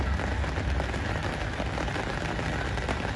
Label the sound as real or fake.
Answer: real